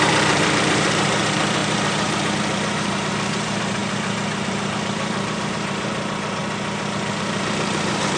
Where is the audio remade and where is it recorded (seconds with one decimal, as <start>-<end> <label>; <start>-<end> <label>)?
0.0-6.4 remade; 6.4-7.2 recorded; 7.2-8.2 remade